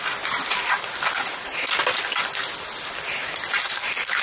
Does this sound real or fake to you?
real